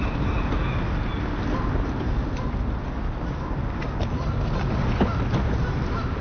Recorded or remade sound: recorded